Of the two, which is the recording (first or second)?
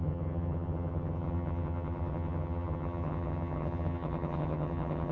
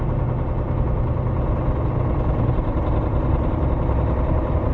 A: second